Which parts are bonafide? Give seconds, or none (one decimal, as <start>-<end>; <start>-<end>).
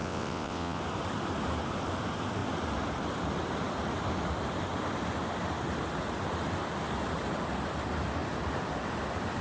0.8-9.4